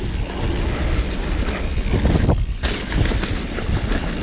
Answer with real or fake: real